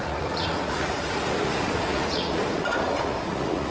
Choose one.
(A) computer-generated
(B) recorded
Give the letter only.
A